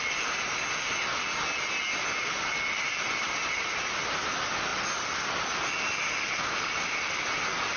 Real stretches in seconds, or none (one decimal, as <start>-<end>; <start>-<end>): 0.0-7.8